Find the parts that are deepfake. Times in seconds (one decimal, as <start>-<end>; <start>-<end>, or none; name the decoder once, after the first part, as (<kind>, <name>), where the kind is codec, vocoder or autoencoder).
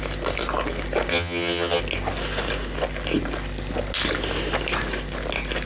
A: 1.1-1.8 (vocoder, HiFi-GAN)